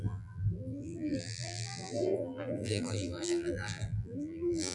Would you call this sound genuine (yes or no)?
no